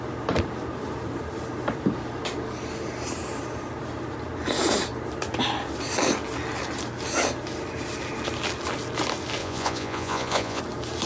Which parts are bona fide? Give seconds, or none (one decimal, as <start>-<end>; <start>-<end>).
0.0-9.4; 10.6-11.1